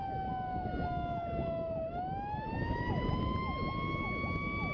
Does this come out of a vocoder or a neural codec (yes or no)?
no